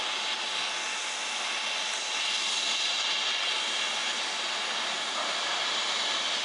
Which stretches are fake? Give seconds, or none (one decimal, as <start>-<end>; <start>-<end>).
4.0-6.4